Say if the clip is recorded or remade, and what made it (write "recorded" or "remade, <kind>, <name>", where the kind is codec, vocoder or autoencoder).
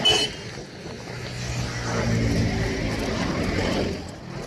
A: recorded